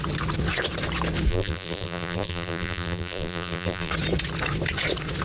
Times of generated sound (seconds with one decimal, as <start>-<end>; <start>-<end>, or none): 1.3-3.9